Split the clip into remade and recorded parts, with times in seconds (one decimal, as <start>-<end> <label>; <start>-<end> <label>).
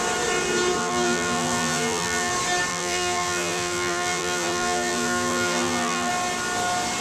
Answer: 0.0-0.8 recorded; 0.8-2.3 remade; 2.3-2.7 recorded; 2.7-6.1 remade; 6.1-7.0 recorded